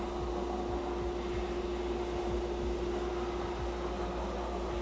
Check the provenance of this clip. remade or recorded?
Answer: recorded